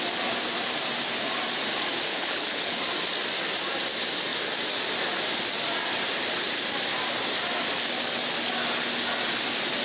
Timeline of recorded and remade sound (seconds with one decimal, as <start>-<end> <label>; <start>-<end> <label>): 0.0-2.1 recorded; 2.1-2.8 remade; 2.8-9.8 recorded